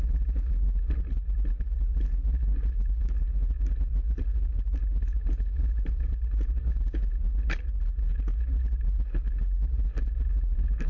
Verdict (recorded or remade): recorded